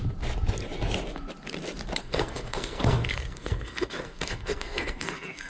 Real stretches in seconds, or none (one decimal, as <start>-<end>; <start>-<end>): 0.0-2.0